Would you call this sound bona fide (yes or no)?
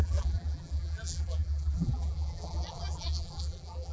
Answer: no